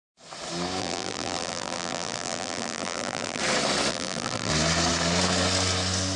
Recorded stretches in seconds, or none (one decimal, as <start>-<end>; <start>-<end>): 0.0-0.8; 3.4-3.9; 4.5-6.2